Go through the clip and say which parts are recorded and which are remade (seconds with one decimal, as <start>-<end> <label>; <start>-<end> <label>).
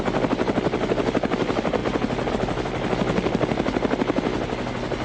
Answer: 0.0-5.0 recorded